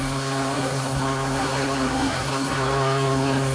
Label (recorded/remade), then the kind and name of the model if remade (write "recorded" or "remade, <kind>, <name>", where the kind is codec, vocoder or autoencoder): remade, codec, SNAC